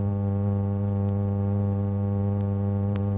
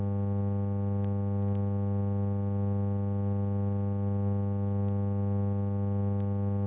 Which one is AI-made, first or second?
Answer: first